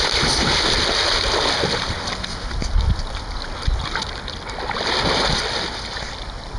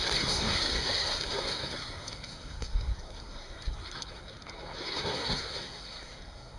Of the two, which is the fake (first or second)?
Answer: second